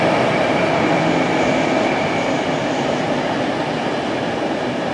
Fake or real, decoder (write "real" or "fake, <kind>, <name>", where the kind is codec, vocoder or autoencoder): real